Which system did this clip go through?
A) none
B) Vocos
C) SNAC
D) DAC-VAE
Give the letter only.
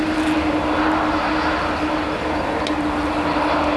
A